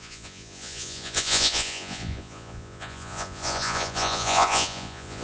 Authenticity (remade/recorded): remade